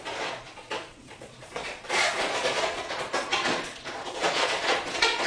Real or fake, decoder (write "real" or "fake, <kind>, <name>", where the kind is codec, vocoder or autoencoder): fake, vocoder, Vocos